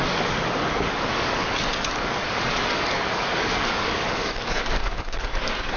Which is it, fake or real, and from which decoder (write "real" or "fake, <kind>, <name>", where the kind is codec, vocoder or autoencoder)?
fake, codec, DAC